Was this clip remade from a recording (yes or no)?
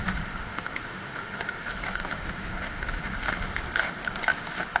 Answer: yes